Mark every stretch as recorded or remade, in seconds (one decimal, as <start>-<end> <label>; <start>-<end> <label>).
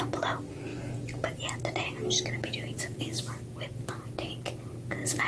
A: 0.0-5.3 recorded